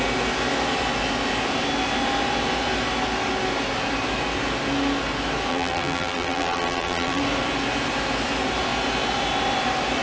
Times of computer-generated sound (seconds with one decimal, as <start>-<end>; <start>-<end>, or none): 5.5-7.2